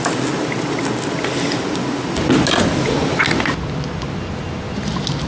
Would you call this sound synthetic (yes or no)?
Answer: no